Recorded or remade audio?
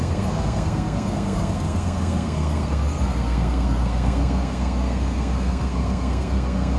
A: remade